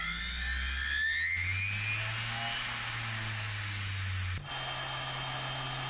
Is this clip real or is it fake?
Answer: real